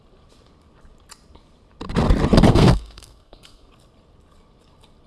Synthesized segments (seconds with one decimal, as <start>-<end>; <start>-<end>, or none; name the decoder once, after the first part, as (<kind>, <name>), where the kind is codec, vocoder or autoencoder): 2.5-3.7 (codec, SNAC)